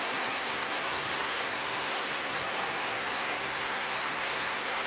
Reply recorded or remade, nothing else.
remade